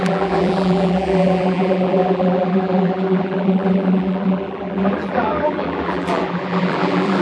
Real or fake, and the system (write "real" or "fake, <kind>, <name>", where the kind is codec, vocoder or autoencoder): fake, vocoder, BigVGAN v2